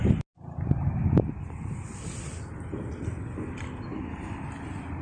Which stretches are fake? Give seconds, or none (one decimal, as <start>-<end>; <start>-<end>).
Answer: none